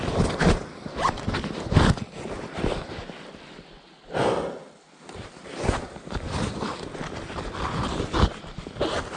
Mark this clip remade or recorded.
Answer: recorded